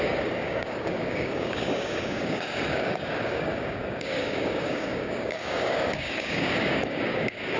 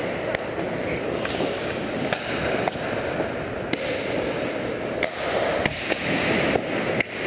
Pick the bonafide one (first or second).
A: second